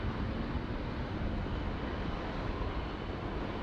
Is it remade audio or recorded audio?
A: recorded